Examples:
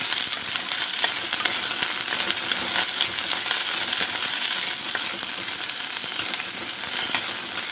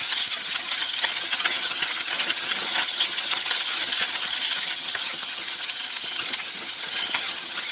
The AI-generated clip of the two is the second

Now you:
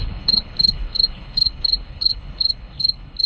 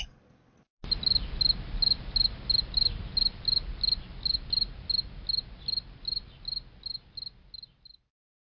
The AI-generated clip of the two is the first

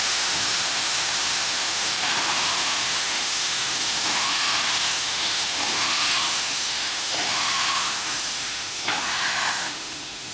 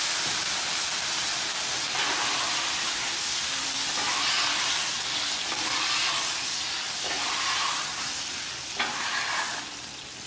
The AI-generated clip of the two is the first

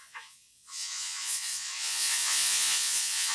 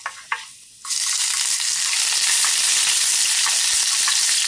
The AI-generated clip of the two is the first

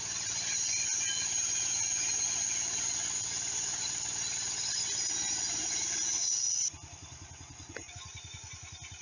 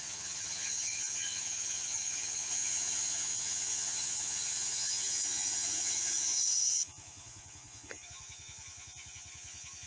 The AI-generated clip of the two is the second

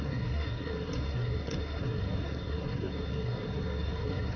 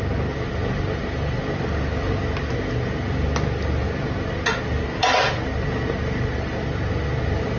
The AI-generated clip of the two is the first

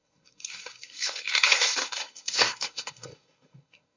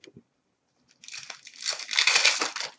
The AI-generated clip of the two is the first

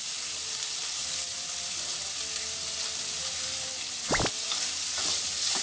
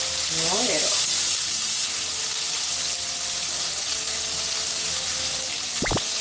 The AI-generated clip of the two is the first